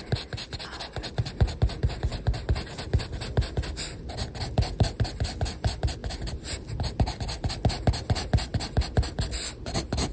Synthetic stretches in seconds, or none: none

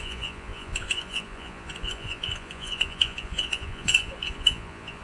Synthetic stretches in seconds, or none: 0.0-5.0 (vocoder, Vocos)